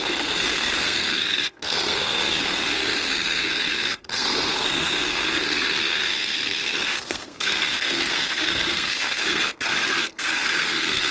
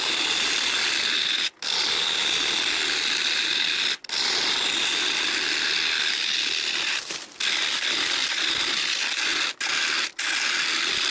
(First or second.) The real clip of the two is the second